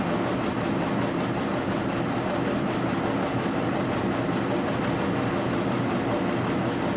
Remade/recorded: recorded